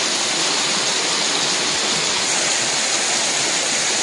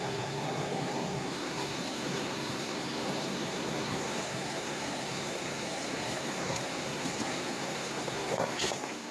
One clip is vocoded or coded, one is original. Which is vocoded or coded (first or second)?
second